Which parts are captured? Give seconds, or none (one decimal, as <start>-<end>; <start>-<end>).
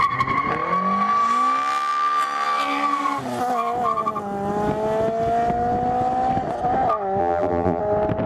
0.0-7.2; 7.8-8.3